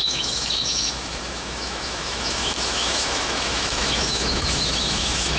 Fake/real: fake